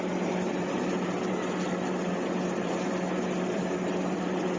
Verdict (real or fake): real